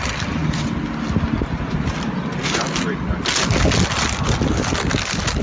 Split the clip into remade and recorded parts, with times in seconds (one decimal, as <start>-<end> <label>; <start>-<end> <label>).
0.0-5.4 recorded